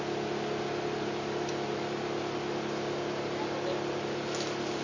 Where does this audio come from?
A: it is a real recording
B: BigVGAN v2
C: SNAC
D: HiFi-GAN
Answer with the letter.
A